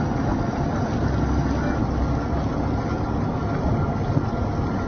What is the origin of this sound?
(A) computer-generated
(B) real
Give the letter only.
B